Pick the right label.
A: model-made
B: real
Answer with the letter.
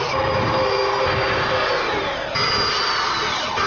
B